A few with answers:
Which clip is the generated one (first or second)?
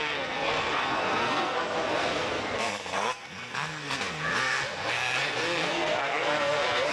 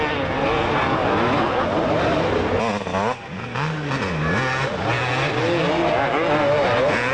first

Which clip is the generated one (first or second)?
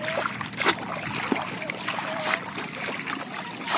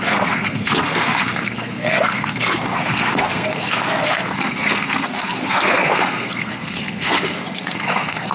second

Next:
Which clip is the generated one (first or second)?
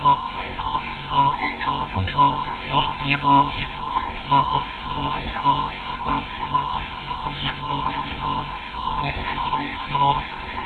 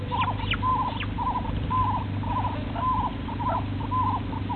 first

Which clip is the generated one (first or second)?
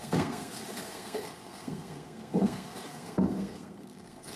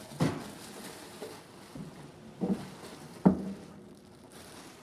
first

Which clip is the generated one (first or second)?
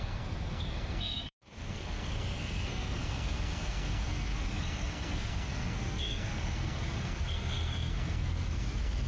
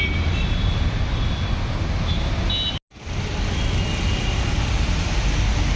first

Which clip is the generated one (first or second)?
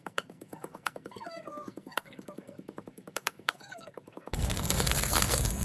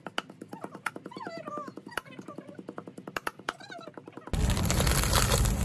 first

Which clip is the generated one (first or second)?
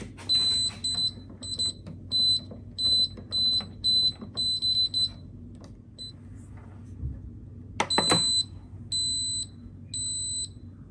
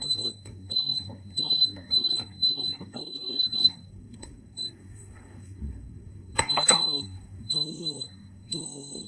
second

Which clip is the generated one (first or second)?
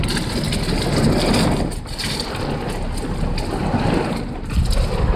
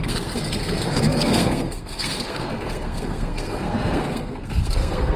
second